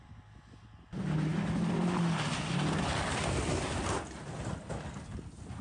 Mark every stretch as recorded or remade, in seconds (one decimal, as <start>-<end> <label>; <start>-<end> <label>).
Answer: 0.0-5.6 recorded